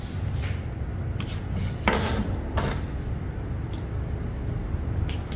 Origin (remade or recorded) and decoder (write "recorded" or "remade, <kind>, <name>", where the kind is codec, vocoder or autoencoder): recorded